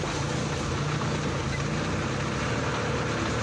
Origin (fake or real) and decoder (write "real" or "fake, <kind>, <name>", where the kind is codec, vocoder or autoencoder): real